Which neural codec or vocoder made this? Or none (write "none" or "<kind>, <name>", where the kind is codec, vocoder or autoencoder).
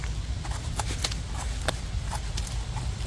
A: none